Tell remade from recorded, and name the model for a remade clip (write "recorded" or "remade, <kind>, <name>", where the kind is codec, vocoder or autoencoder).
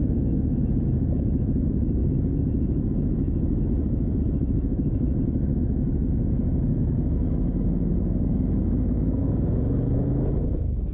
remade, autoencoder, DAC-VAE